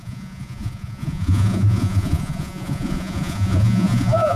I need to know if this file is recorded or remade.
remade